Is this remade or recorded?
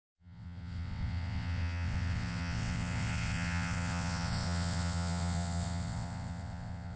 remade